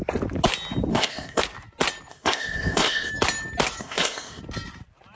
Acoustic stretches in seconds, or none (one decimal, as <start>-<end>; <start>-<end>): 0.0-0.9; 1.4-2.1; 3.1-3.8; 4.4-5.2